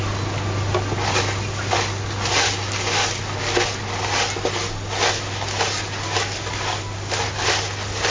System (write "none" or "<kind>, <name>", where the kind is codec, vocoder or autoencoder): none